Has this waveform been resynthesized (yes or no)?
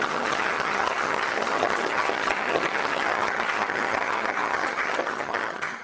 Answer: yes